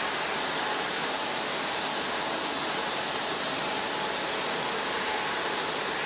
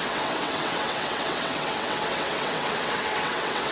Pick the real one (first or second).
first